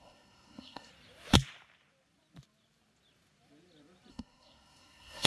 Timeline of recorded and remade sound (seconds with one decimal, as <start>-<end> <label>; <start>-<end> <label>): 0.0-0.9 remade; 0.9-4.1 recorded; 4.1-5.3 remade

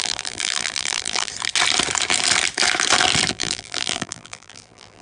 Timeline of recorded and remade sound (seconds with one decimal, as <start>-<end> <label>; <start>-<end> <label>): 0.0-1.3 remade; 1.3-3.3 recorded; 3.3-5.0 remade

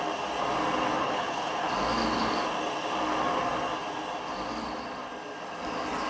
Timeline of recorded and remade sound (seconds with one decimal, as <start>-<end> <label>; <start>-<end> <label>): 0.0-1.0 recorded; 1.0-1.7 remade; 1.7-6.1 recorded

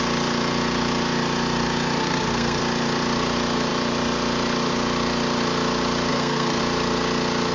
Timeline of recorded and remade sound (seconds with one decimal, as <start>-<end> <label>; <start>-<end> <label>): 0.0-2.0 recorded; 2.0-2.6 remade; 2.6-6.1 recorded; 6.1-6.6 remade; 6.6-7.5 recorded

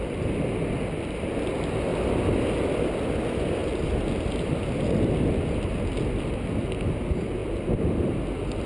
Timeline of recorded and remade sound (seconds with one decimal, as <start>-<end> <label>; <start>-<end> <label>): 0.0-8.7 recorded

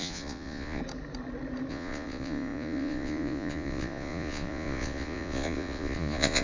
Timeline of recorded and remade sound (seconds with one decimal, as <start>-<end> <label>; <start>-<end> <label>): 0.0-0.8 remade; 0.8-1.7 recorded; 1.7-6.4 remade

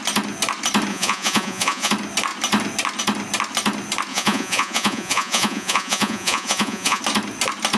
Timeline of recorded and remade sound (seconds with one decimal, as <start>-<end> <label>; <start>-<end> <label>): 0.0-0.9 recorded; 0.9-1.9 remade; 1.9-4.1 recorded; 4.1-7.0 remade; 7.0-7.8 recorded

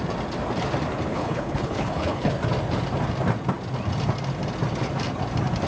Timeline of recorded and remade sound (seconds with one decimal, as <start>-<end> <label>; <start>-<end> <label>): 0.0-1.1 recorded; 1.1-2.3 remade; 2.3-5.7 recorded